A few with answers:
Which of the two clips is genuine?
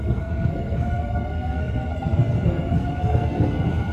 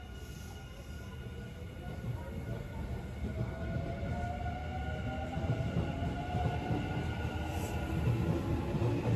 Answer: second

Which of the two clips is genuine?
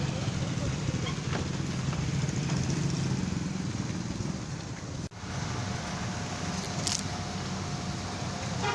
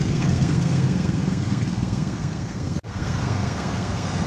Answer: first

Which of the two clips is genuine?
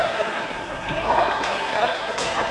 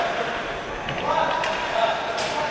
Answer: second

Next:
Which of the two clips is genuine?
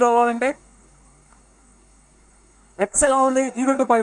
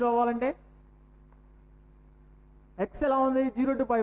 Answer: second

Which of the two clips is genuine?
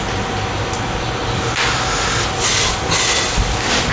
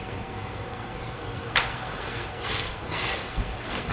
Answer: first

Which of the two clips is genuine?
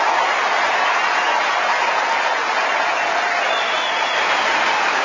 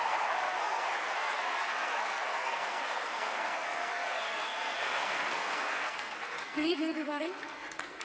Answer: first